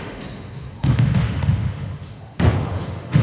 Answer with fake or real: fake